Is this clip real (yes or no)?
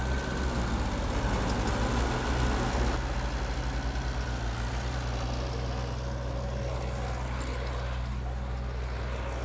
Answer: yes